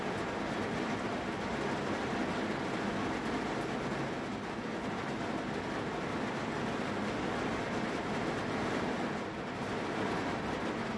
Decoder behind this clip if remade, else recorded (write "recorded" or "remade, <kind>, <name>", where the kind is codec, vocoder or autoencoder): recorded